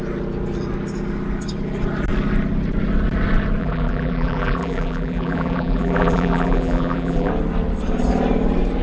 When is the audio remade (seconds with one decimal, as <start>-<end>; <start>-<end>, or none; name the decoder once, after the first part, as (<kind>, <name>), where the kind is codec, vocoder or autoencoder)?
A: 3.6-7.3 (vocoder, BigVGAN v2)